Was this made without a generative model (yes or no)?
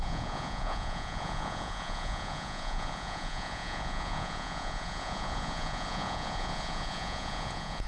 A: no